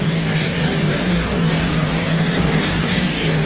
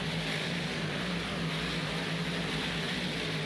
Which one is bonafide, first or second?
second